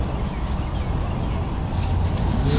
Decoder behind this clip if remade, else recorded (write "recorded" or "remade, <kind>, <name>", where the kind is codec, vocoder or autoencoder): recorded